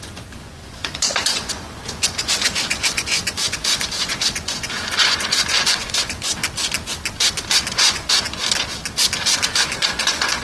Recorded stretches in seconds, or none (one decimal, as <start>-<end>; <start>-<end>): 6.4-7.7; 8.4-9.8